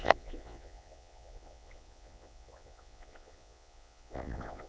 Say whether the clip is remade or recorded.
remade